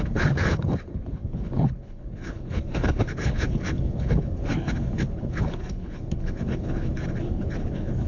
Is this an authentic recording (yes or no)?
no